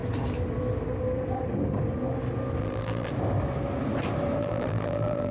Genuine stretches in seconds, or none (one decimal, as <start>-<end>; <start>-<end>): 0.0-2.6; 3.1-4.4